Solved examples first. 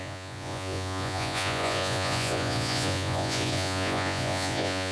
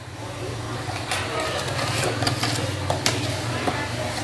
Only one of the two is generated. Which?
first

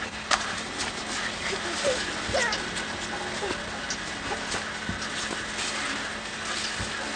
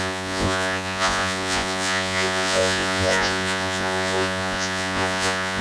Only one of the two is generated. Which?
second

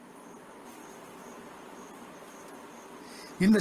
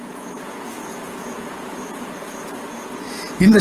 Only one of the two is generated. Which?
second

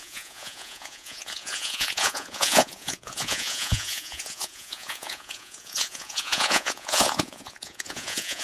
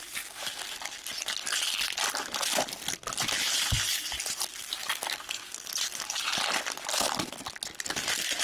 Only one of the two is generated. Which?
first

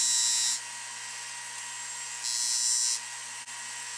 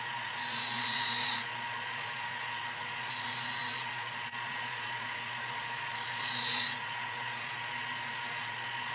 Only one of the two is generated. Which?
second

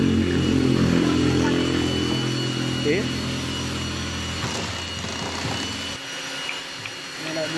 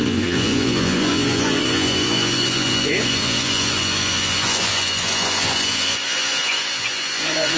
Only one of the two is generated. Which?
second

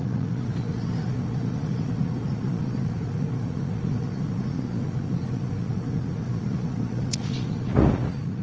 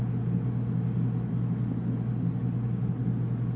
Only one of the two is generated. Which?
first